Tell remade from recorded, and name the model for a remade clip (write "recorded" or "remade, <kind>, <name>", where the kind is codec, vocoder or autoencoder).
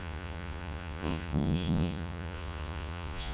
remade, vocoder, Vocos